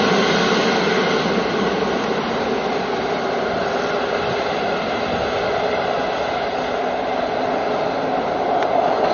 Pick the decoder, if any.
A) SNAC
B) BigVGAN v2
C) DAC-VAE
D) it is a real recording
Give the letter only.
D